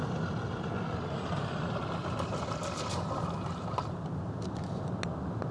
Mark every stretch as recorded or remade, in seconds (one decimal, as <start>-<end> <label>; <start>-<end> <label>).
0.0-5.5 recorded